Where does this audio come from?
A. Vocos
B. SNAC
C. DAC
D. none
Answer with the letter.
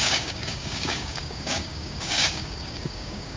C